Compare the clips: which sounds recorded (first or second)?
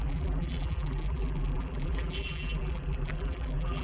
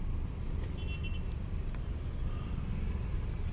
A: second